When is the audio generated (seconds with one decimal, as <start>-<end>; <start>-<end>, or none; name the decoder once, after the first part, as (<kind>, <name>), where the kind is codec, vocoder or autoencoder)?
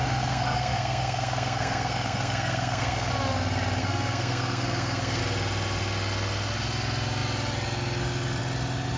0.0-3.1 (codec, SNAC); 3.8-5.2